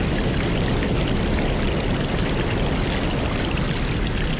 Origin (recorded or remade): recorded